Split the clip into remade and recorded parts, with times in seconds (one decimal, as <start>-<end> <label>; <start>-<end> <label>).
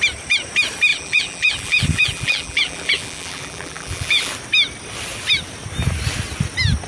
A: 0.0-0.9 recorded; 0.9-4.3 remade; 4.3-6.9 recorded